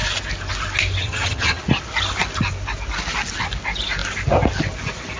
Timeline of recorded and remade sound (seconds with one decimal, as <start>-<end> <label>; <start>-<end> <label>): 0.0-1.0 recorded; 1.0-1.6 remade; 1.6-5.2 recorded